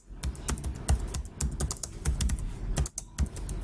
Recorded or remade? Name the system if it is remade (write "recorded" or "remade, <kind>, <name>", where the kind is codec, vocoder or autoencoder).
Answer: recorded